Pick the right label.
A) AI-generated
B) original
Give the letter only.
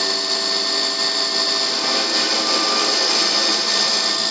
B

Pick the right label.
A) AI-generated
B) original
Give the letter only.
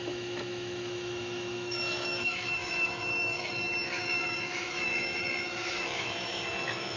A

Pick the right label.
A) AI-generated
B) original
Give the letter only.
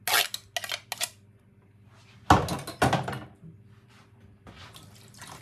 B